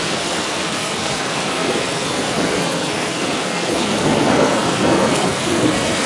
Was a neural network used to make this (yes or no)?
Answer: yes